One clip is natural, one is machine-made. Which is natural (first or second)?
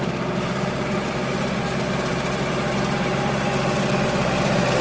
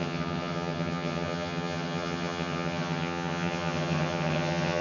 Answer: first